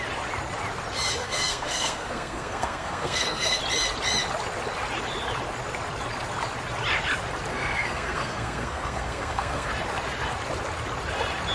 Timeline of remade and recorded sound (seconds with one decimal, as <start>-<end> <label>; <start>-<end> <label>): 0.0-1.2 recorded; 1.2-3.6 remade; 3.6-7.5 recorded; 7.5-9.7 remade; 9.7-11.5 recorded